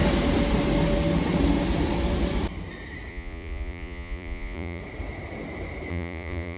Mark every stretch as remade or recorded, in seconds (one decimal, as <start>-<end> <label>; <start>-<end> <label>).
0.0-3.1 recorded; 3.1-4.8 remade; 4.8-5.9 recorded; 5.9-6.6 remade